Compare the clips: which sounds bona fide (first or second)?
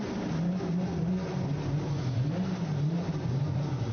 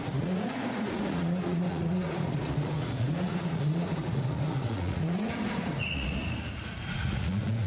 first